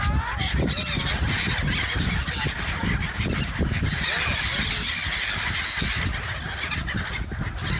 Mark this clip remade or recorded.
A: recorded